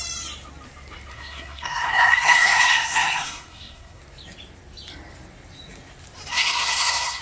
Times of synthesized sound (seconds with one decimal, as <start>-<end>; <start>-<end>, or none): 1.1-4.0; 6.3-7.2